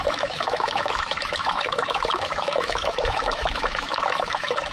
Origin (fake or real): fake